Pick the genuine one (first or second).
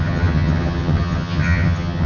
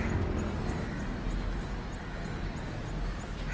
second